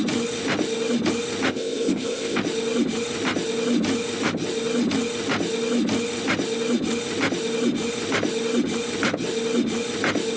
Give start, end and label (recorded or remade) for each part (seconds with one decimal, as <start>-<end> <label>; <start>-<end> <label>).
0.0-1.5 recorded; 1.5-2.4 remade; 2.4-10.4 recorded